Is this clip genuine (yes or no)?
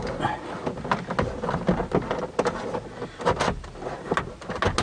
yes